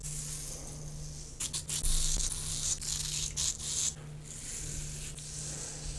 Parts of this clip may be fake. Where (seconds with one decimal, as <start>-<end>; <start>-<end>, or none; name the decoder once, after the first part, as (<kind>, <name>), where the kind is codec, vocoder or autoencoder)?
none